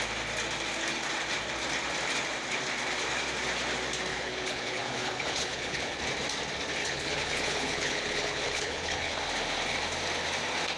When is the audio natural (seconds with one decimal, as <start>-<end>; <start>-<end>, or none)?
0.0-4.1; 6.0-6.8; 9.2-10.8